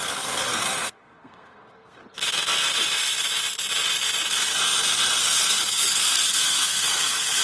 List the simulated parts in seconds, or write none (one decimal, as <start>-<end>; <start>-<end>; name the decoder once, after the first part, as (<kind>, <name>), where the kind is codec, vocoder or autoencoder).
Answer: 0.0-2.0 (codec, SNAC); 5.2-7.4